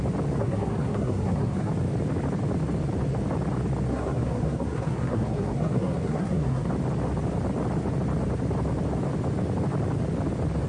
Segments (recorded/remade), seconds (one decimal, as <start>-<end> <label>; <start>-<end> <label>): 0.0-0.4 recorded; 0.4-1.7 remade; 1.7-3.9 recorded; 3.9-6.7 remade; 6.7-10.7 recorded